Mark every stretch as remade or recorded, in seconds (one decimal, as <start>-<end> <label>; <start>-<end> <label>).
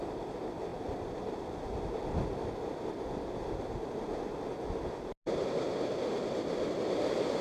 0.0-7.4 recorded